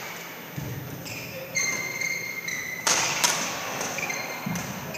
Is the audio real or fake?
real